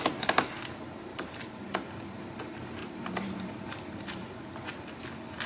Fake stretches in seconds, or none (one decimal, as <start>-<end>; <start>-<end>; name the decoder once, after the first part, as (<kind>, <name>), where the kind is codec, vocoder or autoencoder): 1.1-1.6 (vocoder, BigVGAN v2); 2.8-4.5